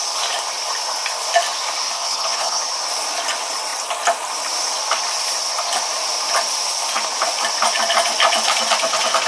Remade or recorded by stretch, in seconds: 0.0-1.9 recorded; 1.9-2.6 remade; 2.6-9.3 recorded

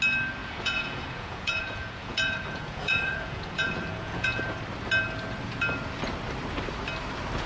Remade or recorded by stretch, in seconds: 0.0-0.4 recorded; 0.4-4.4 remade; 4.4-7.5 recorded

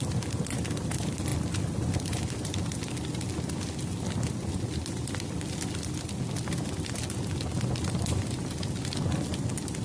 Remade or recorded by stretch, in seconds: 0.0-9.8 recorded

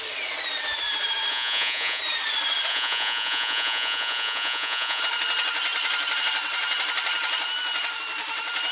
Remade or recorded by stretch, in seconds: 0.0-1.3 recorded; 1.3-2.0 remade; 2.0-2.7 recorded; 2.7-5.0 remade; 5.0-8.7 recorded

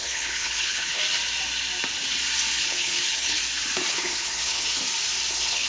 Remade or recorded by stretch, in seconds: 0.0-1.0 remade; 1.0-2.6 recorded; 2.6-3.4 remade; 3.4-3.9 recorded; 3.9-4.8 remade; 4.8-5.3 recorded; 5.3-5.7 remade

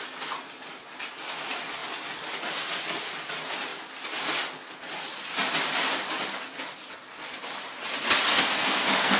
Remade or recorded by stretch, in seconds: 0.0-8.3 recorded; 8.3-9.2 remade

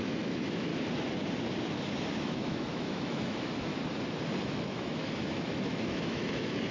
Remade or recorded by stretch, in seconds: 0.0-0.7 remade; 0.7-2.2 recorded; 2.2-3.7 remade; 3.7-4.4 recorded; 4.4-6.7 remade